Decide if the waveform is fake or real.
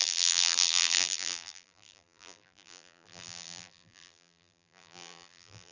fake